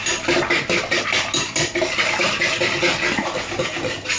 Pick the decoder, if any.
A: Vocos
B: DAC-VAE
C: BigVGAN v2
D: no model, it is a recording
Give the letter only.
D